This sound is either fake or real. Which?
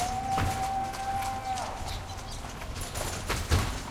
real